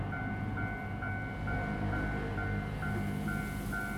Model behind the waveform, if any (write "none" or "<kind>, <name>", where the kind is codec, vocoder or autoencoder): none